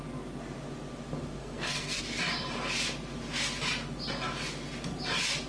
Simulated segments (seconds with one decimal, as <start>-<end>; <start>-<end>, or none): 1.4-2.0